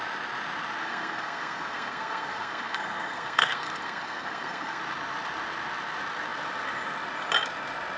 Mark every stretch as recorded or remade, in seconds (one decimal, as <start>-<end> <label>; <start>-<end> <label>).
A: 0.0-0.8 recorded; 0.8-4.8 remade; 4.8-8.0 recorded

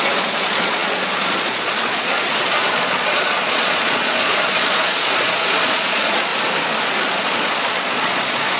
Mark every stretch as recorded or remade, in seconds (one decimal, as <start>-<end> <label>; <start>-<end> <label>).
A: 0.0-6.3 remade; 6.3-6.9 recorded; 6.9-8.6 remade

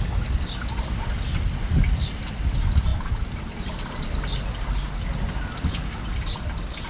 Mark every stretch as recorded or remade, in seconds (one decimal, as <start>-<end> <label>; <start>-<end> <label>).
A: 0.0-6.9 recorded

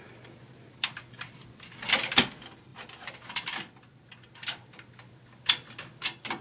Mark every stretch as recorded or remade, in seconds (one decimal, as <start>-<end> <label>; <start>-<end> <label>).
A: 0.0-6.4 recorded

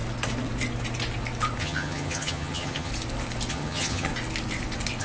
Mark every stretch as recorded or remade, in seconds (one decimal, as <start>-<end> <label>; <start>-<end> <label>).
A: 0.0-1.6 recorded; 1.6-2.9 remade; 2.9-3.5 recorded; 3.5-4.1 remade; 4.1-5.0 recorded

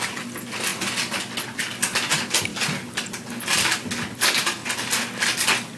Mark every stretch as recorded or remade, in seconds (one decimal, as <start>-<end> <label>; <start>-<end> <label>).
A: 0.0-5.8 recorded

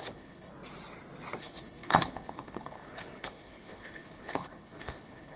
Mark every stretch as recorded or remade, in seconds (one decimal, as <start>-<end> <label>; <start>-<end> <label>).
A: 0.0-0.5 remade; 0.5-1.4 recorded; 1.4-5.4 remade